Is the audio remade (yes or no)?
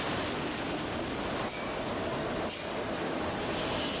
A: no